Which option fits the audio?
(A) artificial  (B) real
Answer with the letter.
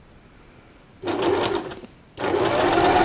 B